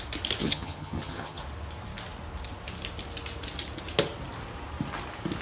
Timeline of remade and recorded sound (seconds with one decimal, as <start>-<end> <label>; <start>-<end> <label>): 0.0-0.4 recorded; 0.4-1.4 remade; 1.4-5.4 recorded